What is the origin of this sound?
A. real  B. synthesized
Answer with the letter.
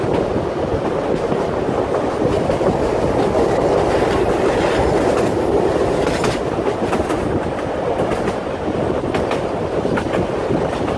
A